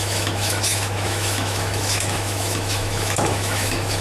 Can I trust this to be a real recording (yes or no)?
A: no